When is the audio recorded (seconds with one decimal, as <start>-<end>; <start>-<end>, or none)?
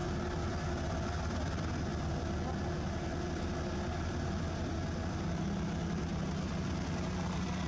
0.0-7.7